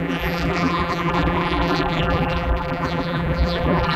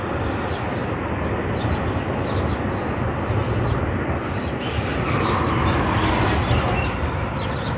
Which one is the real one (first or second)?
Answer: second